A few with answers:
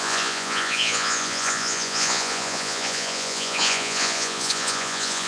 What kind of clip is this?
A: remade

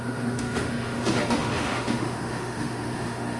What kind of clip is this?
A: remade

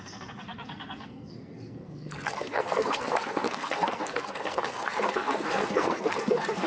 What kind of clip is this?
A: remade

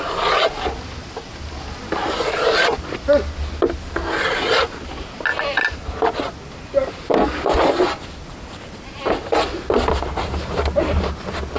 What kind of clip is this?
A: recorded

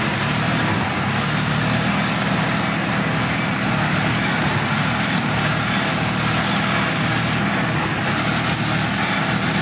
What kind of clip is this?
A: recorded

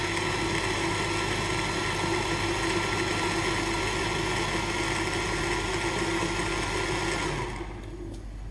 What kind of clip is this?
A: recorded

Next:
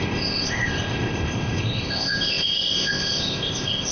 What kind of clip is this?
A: remade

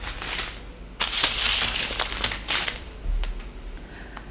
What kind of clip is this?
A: recorded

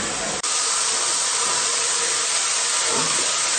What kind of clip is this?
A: remade